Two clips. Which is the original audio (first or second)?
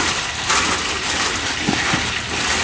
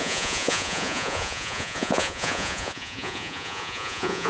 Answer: first